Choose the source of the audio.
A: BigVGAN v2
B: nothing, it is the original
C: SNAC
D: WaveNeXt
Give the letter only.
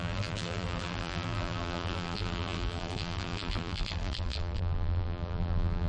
A